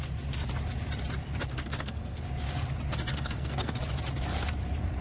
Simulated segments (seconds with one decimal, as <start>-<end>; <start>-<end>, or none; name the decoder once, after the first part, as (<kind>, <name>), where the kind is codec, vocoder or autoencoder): 1.5-2.2 (codec, SNAC); 3.1-3.8